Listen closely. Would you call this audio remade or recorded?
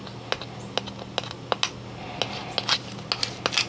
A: recorded